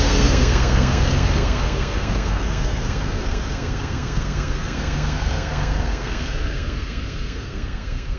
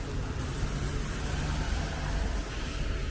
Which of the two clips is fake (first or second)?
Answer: first